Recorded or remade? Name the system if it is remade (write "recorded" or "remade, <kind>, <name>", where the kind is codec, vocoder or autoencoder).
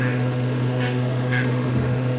remade, autoencoder, DAC-VAE